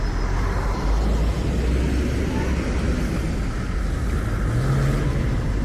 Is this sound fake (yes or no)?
no